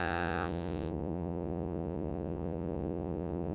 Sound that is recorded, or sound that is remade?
remade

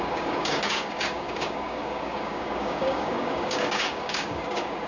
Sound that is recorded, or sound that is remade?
remade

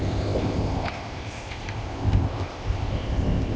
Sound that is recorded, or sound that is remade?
remade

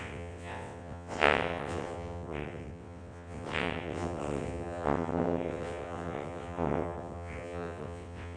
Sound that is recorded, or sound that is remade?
remade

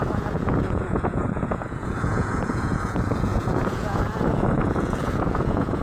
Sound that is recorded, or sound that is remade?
remade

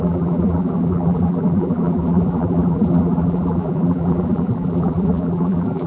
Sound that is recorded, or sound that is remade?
remade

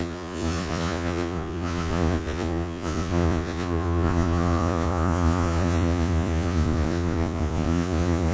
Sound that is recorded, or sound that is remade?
remade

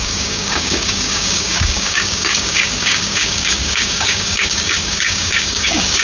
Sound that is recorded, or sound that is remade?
remade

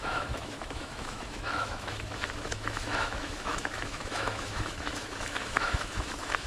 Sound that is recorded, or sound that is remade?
remade